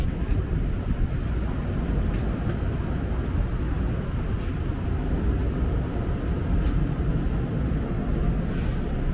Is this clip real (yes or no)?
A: yes